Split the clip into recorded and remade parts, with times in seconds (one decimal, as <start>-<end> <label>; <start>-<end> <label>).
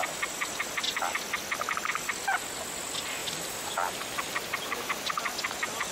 0.0-3.2 recorded; 3.2-5.1 remade; 5.1-5.9 recorded